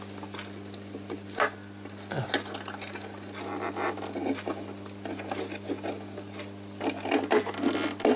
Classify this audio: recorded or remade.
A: recorded